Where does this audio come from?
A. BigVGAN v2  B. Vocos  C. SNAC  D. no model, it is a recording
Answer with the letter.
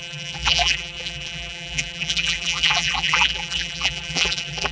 A